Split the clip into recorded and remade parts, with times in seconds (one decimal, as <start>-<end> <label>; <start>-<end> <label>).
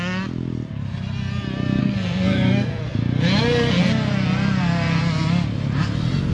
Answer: 0.0-1.8 recorded; 1.8-2.8 remade; 2.8-6.3 recorded